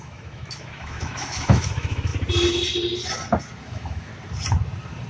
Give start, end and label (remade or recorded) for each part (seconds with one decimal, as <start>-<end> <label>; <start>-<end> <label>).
0.0-2.1 remade; 2.1-3.6 recorded; 3.6-4.1 remade; 4.1-5.1 recorded